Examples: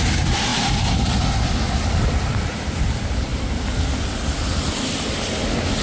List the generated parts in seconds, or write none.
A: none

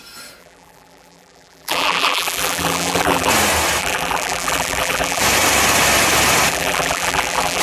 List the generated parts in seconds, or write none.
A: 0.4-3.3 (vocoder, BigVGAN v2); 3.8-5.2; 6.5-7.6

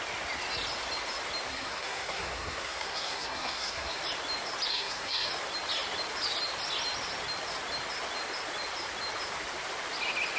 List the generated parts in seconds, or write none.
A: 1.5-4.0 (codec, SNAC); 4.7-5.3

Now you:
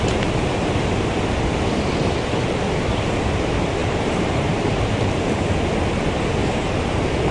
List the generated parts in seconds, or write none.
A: 3.8-5.2 (vocoder, BigVGAN v2); 6.4-7.3

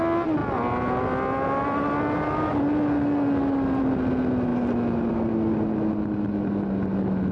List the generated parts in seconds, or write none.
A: none

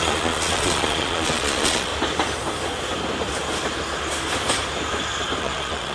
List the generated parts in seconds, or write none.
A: 0.0-1.9 (vocoder, Vocos); 5.4-5.9

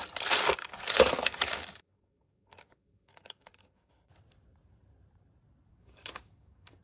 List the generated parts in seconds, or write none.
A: 0.6-3.9 (codec, DAC); 5.7-6.8